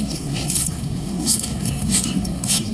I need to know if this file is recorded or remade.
remade